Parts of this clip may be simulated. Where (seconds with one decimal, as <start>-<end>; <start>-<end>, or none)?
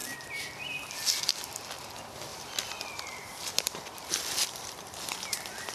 2.3-5.1